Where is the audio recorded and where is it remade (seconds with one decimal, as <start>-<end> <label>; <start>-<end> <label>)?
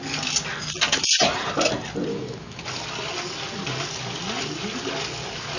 0.0-2.1 recorded; 2.1-2.6 remade; 2.6-5.6 recorded